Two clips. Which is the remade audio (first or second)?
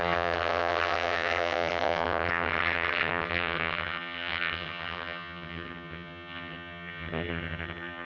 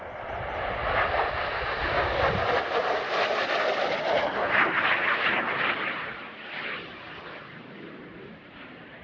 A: first